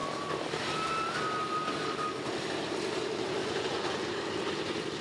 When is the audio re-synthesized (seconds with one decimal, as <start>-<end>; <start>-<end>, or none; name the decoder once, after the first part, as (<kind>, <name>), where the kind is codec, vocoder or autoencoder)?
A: 3.4-4.1 (vocoder, Vocos)